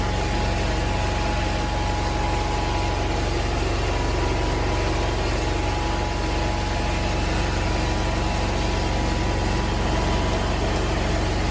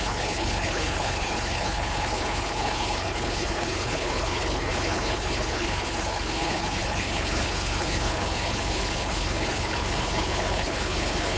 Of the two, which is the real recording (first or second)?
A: first